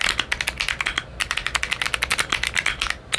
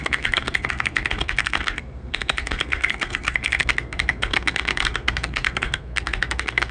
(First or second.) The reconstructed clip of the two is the second